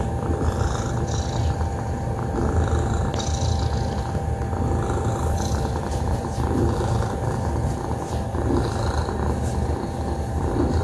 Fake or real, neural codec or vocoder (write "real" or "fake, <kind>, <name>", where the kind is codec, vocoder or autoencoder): real